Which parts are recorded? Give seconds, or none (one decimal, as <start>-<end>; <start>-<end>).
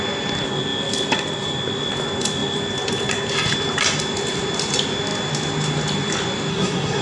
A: 0.0-6.5